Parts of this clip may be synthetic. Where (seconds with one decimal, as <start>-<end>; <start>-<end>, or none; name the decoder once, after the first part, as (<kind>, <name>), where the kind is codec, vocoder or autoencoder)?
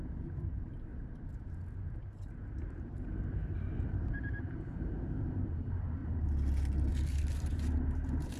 0.0-0.9 (vocoder, BigVGAN v2); 1.9-6.0; 6.9-8.4